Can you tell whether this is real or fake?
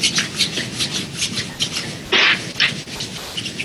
real